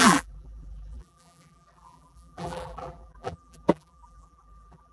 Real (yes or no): no